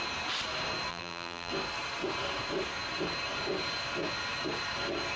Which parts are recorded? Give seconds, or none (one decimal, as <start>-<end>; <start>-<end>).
0.0-0.9; 1.5-5.2